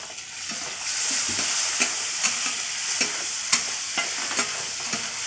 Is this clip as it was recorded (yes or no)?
yes